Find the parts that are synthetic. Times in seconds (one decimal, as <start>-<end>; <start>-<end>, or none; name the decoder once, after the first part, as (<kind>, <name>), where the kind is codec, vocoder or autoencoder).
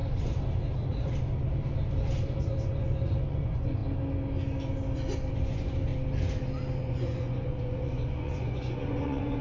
2.4-3.8 (vocoder, Vocos); 5.3-5.9; 6.8-9.4